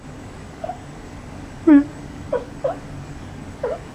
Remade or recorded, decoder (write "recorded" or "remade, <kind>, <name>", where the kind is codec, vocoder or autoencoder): remade, codec, DAC